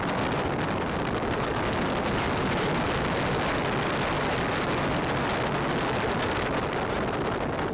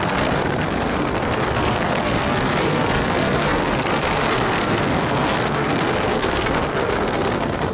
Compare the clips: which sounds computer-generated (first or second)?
second